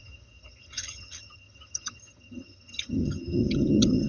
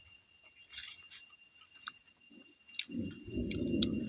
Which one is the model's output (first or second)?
first